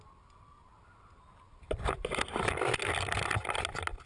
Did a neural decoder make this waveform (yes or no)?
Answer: no